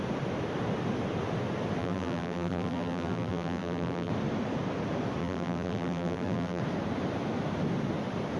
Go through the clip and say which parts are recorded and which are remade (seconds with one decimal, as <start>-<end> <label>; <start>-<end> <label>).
0.0-1.8 recorded; 1.8-4.1 remade; 4.1-5.2 recorded; 5.2-6.6 remade; 6.6-8.4 recorded